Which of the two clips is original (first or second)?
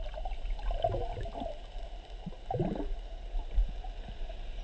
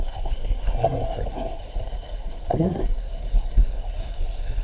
first